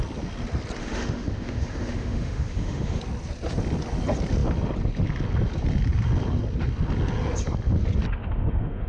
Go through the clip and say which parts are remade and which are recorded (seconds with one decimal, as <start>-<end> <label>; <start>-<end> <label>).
0.0-0.8 recorded; 0.8-3.0 remade; 3.0-8.2 recorded; 8.2-8.9 remade

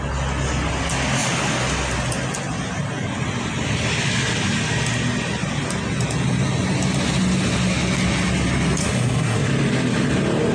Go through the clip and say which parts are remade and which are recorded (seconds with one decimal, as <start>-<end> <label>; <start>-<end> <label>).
0.0-8.8 recorded; 8.8-9.5 remade; 9.5-10.5 recorded

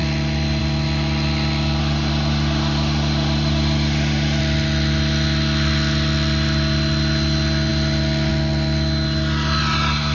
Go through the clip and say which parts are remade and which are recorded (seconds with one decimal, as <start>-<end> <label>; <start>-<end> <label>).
0.0-1.8 recorded; 1.8-4.4 remade; 4.4-10.1 recorded